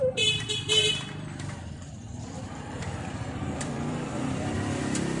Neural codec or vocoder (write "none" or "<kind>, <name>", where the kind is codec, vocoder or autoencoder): vocoder, BigVGAN v2